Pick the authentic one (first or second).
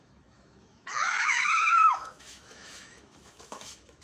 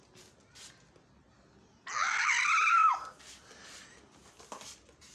second